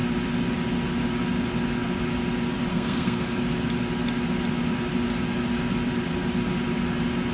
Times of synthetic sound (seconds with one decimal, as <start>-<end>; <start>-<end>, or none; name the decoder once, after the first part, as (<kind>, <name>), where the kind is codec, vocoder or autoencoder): 2.7-3.2 (codec, SNAC)